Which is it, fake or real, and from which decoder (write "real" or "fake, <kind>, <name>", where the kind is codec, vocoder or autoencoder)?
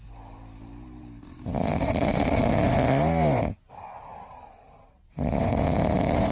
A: real